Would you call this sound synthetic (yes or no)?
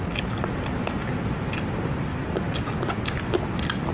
no